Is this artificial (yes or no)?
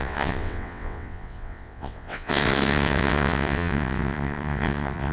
yes